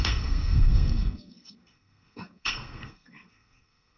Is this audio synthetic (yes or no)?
yes